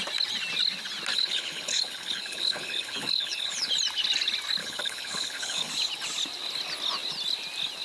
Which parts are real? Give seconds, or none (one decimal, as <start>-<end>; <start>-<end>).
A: 0.0-1.1; 3.7-4.6; 5.7-7.8